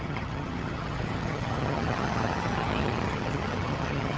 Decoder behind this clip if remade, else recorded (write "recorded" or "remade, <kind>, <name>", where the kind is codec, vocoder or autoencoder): remade, vocoder, HiFi-GAN